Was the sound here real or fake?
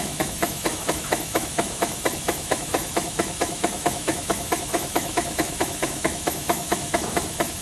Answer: fake